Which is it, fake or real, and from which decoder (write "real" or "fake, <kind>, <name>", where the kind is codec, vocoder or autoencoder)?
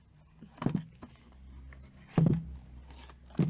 real